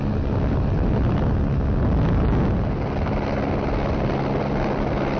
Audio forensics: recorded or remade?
recorded